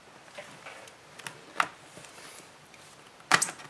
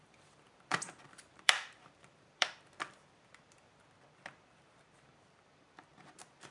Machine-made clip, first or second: second